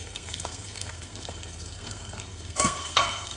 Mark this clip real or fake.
fake